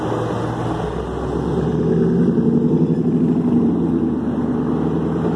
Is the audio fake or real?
real